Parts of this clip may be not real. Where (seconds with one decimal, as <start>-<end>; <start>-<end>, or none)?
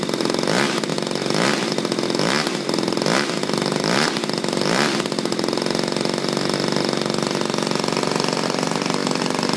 none